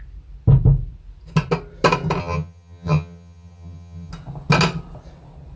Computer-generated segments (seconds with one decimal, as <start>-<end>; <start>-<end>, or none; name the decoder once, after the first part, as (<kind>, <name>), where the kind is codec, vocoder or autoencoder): 2.2-4.1 (vocoder, HiFi-GAN)